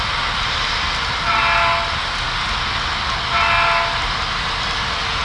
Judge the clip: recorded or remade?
recorded